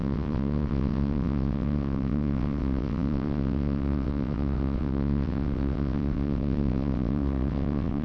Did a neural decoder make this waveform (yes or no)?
yes